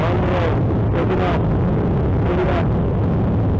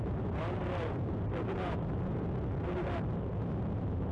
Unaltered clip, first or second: first